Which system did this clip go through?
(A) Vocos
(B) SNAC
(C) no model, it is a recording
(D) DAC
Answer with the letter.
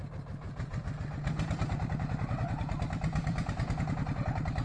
C